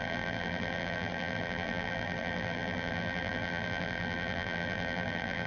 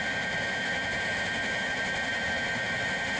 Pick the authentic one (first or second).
second